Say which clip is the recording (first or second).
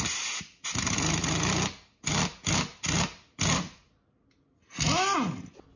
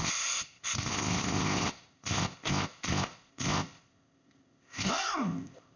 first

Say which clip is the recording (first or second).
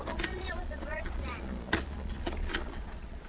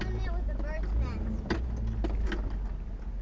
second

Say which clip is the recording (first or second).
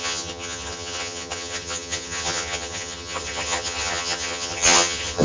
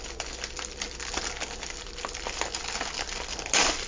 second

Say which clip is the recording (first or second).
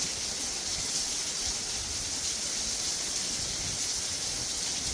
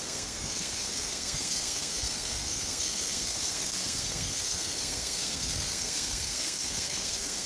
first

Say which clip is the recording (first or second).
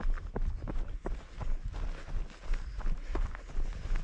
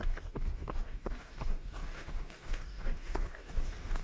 first